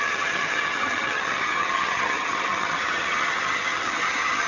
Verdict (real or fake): fake